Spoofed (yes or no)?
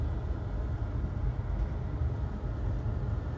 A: no